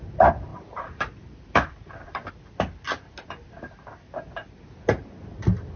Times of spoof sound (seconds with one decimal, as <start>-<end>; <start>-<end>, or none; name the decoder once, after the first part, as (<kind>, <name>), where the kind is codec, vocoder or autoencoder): 0.5-2.3 (vocoder, BigVGAN v2)